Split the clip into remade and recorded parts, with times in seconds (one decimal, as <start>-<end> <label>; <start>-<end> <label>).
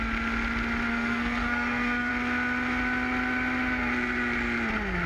0.0-0.9 recorded; 0.9-2.1 remade; 2.1-5.1 recorded